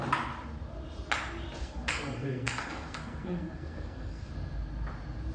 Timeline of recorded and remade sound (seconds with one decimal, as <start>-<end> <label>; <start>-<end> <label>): 0.0-1.6 recorded; 1.6-4.3 remade; 4.3-5.3 recorded